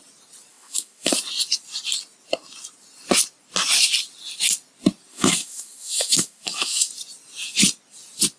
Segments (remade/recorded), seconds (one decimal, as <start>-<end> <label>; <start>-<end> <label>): 0.0-0.5 recorded; 0.5-1.1 remade; 1.1-5.1 recorded; 5.1-6.9 remade; 6.9-8.4 recorded